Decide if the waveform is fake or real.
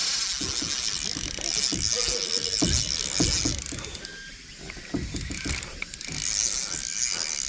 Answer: real